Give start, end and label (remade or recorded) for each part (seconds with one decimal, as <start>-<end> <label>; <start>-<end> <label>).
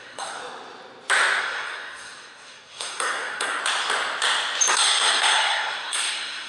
0.0-0.4 remade; 0.4-1.4 recorded; 1.4-3.6 remade; 3.6-4.7 recorded; 4.7-6.5 remade